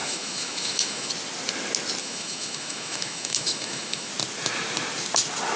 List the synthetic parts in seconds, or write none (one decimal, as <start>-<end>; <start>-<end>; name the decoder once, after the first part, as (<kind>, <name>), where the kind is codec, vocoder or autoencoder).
0.0-1.1 (autoencoder, DAC-VAE); 2.0-4.1